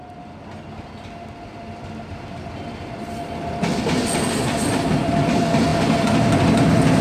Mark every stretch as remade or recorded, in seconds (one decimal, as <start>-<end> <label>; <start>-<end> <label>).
0.0-7.0 recorded